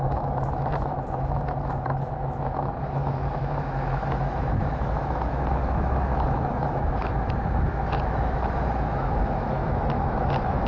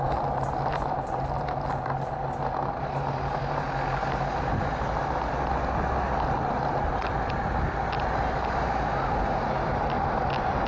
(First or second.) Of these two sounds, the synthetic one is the first